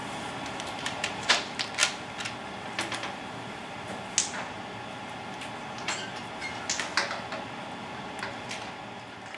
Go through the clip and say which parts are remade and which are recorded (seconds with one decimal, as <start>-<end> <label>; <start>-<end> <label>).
0.0-1.3 remade; 1.3-9.4 recorded